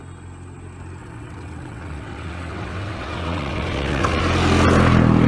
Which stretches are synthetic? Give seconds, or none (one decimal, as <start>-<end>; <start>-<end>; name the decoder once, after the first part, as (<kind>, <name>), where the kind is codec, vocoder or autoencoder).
1.0-4.2 (vocoder, WaveNeXt)